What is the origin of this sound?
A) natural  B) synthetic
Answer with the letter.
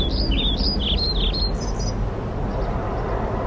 A